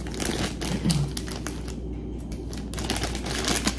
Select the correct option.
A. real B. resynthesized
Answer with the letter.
A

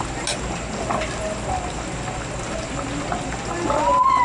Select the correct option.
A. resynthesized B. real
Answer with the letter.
B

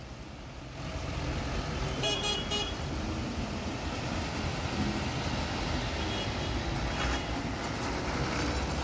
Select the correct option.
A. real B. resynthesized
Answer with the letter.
A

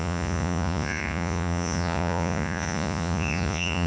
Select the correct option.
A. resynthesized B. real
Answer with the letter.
A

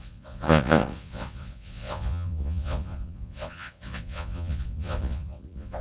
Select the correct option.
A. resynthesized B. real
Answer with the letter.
A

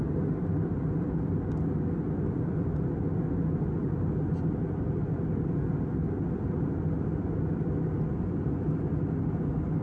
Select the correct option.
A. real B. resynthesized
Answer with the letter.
A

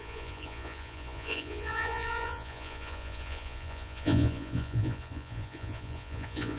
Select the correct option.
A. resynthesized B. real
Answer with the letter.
A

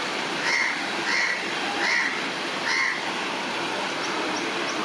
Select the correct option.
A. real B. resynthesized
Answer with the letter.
A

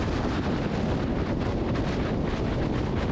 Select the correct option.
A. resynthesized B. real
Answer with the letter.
B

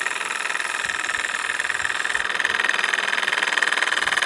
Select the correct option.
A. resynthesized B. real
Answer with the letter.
B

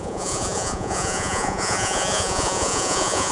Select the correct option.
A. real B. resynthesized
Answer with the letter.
B